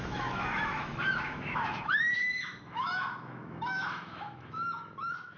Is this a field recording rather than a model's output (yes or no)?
no